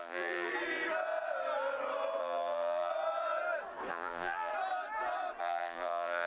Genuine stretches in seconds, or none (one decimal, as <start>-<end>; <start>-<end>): 0.5-2.2; 2.9-3.9; 4.5-5.4